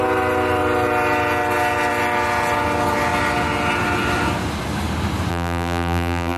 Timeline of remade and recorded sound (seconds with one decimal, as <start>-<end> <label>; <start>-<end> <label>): 0.0-5.3 recorded; 5.3-6.4 remade